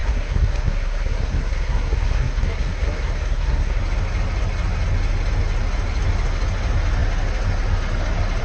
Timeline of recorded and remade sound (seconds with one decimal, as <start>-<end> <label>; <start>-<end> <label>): 0.0-3.8 remade; 3.8-8.4 recorded